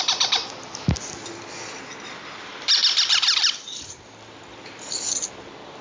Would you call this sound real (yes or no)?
yes